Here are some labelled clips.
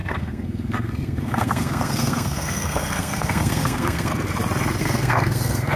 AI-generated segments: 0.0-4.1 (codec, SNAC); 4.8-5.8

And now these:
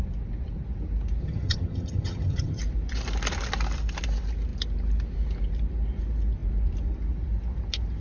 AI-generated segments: 1.2-2.6 (vocoder, HiFi-GAN)

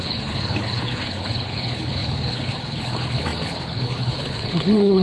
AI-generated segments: 0.0-5.0 (codec, HILCodec)

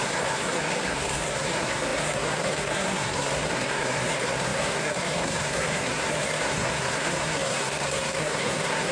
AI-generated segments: 0.0-8.9 (codec, SNAC)

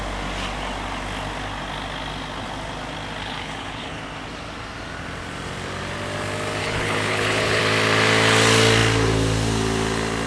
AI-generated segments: 3.2-4.0 (codec, HILCodec); 6.6-7.6

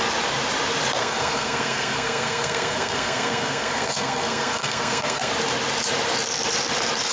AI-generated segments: 1.0-5.3 (codec, SNAC)

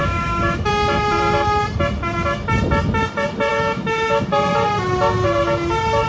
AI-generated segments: 0.0-0.7 (autoencoder, DAC-VAE); 3.5-4.2

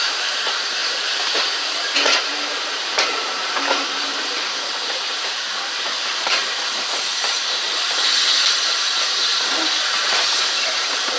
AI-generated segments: 0.0-11.2 (vocoder, BigVGAN v2)